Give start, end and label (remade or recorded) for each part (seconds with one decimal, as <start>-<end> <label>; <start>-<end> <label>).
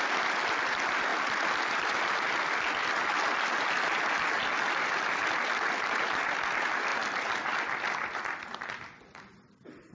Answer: 0.0-6.9 recorded; 6.9-7.5 remade; 7.5-9.9 recorded